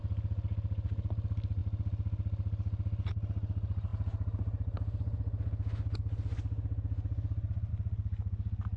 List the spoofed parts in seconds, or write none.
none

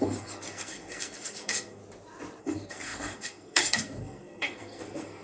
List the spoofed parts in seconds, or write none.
0.0-1.8; 2.4-5.2

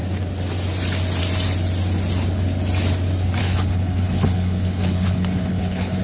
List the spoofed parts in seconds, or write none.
3.4-6.0

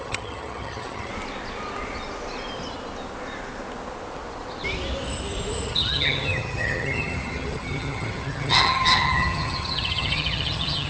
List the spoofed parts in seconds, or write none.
0.0-1.1; 5.7-10.9

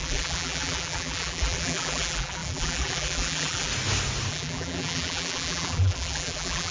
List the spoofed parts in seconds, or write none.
0.0-3.7; 4.3-6.7

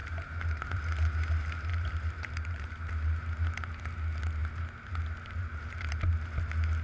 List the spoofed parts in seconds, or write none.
0.0-0.8; 1.7-3.2; 5.4-6.1

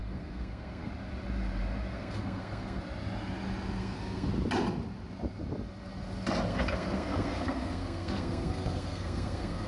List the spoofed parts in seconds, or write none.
0.0-0.9; 1.9-2.8; 3.8-4.3; 6.5-9.7

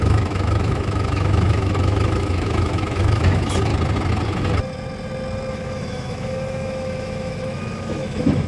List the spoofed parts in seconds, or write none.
0.0-3.7; 5.5-8.5